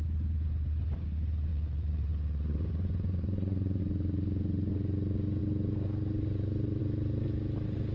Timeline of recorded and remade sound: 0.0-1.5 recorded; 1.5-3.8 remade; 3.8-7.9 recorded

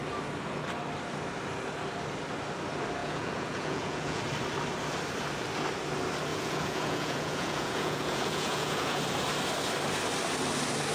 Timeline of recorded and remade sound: 0.0-3.0 recorded; 3.0-4.2 remade; 4.2-6.3 recorded; 6.3-9.0 remade; 9.0-10.9 recorded